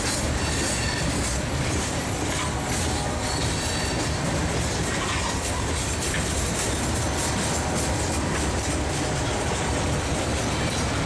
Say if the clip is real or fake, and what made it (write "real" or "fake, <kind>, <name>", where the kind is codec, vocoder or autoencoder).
real